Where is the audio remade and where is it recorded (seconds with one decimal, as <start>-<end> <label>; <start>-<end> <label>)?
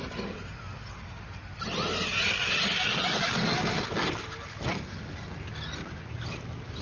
0.0-6.8 recorded